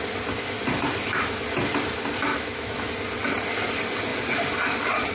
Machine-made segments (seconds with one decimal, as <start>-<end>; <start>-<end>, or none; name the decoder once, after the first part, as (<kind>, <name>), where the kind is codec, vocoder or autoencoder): 2.3-2.8 (autoencoder, DAC-VAE)

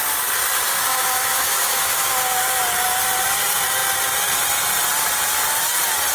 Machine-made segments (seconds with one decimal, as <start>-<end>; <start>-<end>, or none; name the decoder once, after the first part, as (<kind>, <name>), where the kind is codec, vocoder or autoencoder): 0.9-2.1 (autoencoder, DAC-VAE)